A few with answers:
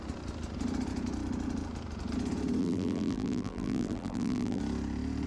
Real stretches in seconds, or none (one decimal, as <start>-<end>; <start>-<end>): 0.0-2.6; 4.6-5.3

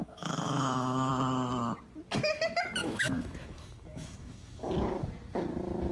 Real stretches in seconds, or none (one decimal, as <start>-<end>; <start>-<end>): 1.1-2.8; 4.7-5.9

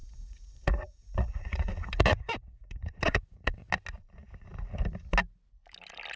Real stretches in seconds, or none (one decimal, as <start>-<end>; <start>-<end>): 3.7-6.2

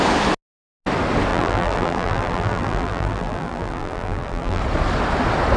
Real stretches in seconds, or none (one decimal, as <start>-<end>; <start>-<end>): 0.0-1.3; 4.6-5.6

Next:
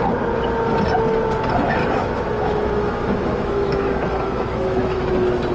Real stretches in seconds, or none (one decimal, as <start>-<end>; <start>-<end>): 0.0-1.8; 5.1-5.5

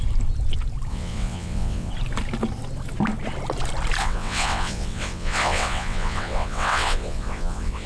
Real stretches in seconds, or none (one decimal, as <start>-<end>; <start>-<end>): 0.0-0.9; 1.9-4.0

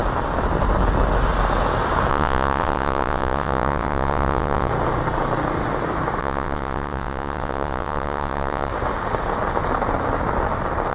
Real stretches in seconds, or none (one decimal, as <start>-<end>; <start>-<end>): 0.0-2.1; 4.7-6.2; 8.7-10.9

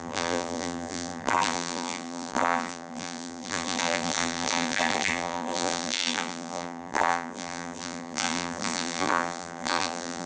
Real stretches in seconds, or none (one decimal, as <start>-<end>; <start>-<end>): none